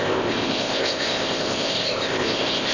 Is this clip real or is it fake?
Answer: fake